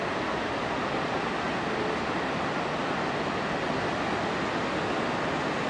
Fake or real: real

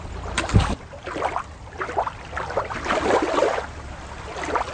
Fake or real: real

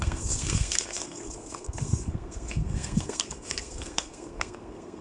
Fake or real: fake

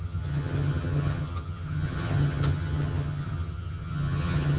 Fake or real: fake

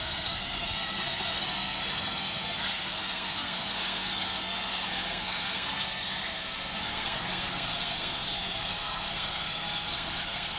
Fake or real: fake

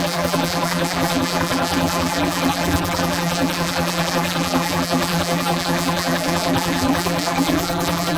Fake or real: fake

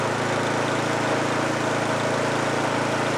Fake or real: real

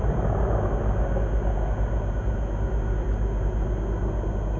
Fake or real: real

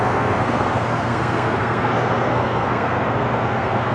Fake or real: fake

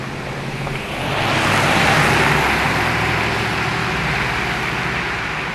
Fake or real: real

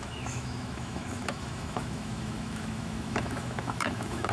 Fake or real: fake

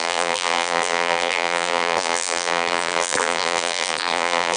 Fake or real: fake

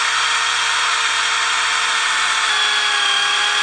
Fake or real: real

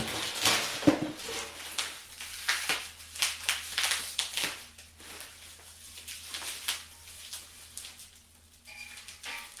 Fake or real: real